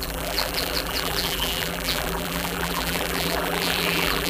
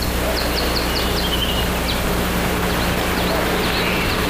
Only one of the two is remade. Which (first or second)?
first